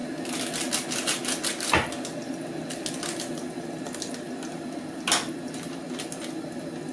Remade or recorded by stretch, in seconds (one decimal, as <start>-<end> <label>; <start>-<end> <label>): 0.0-6.9 recorded